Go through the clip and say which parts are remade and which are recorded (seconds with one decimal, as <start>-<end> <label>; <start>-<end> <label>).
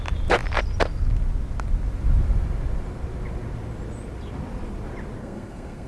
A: 0.0-5.2 recorded; 5.2-5.9 remade